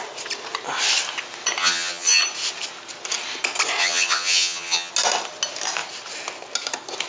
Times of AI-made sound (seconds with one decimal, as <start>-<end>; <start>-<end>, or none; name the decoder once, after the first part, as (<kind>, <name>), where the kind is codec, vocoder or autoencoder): 1.6-2.2 (vocoder, HiFi-GAN); 3.8-4.9